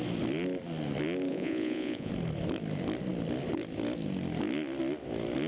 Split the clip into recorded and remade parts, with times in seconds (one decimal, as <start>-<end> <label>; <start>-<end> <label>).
0.0-1.3 recorded; 1.3-2.1 remade; 2.1-5.5 recorded